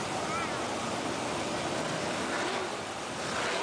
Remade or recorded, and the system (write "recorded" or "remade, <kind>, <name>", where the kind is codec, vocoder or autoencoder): recorded